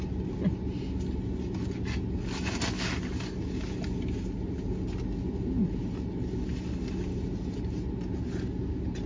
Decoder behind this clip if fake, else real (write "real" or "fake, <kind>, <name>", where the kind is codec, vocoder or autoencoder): real